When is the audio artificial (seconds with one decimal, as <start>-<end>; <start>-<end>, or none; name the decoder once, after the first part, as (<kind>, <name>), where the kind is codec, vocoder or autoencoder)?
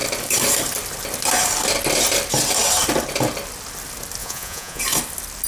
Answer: 4.2-4.8 (vocoder, Vocos)